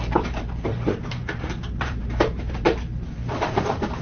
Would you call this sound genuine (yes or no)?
no